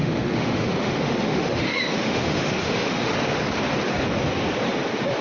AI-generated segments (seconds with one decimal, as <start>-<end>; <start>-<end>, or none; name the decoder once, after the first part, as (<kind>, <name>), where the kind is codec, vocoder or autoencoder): 0.0-3.1 (autoencoder, DAC-VAE)